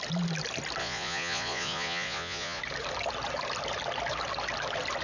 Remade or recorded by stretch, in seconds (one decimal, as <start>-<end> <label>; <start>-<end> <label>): 0.0-0.8 recorded; 0.8-2.6 remade; 2.6-5.0 recorded